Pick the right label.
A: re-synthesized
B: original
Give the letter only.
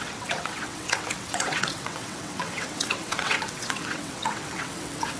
A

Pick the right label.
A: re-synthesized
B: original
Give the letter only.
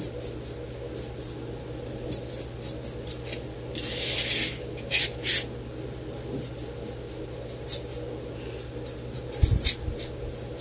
B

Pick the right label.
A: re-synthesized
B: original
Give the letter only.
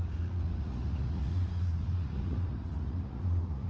A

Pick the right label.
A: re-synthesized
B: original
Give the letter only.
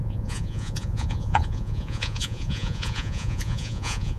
A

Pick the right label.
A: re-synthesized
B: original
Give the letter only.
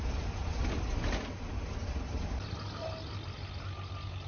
B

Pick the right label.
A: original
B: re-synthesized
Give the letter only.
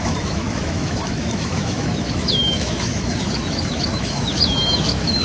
B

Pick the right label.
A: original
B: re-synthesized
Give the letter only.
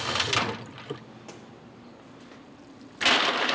A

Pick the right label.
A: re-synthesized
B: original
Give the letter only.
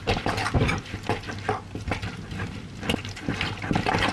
B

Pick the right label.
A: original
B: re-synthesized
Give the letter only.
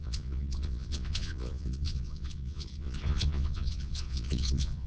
B